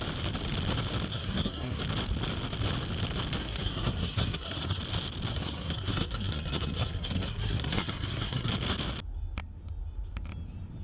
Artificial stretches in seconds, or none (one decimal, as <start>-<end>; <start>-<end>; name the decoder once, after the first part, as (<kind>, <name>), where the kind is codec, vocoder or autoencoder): 1.1-1.8 (codec, SNAC); 3.4-4.8; 5.3-8.5